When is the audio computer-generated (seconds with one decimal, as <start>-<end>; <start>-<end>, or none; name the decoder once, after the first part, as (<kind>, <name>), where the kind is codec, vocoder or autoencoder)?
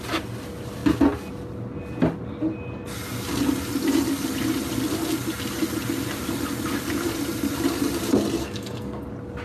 8.4-9.0 (codec, SNAC)